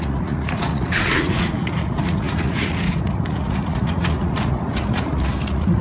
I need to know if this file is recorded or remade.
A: remade